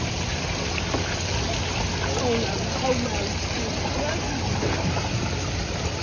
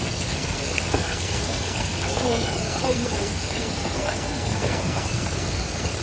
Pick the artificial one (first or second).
second